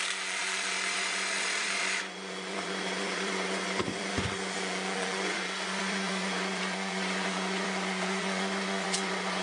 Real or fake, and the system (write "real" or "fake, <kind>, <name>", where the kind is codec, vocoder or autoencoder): fake, vocoder, Vocos